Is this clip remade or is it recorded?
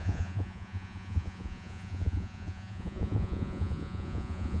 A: remade